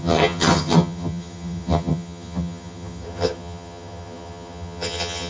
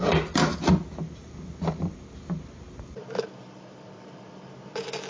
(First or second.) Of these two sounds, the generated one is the first